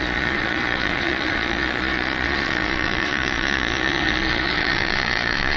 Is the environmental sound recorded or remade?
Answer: remade